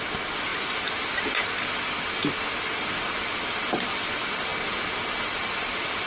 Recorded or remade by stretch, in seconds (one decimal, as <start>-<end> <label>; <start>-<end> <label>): 0.0-4.5 remade; 4.5-5.4 recorded; 5.4-6.1 remade